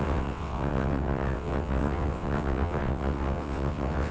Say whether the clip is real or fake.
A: fake